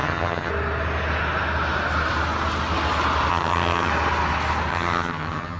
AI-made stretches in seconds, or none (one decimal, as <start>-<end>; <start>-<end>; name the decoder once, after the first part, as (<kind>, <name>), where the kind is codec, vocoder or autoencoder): 0.0-0.5 (vocoder, HiFi-GAN); 3.3-3.9; 4.7-5.6